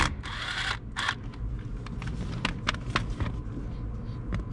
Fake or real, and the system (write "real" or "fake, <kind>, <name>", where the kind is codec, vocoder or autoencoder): real